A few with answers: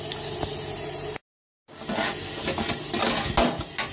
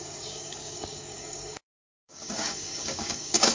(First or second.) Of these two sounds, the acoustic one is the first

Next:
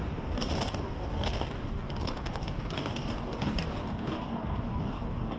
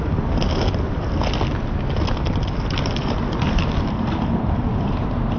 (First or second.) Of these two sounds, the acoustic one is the second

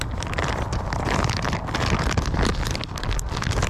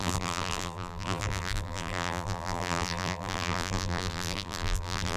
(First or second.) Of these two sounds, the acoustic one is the first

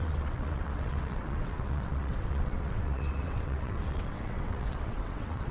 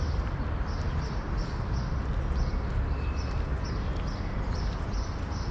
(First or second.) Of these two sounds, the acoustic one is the second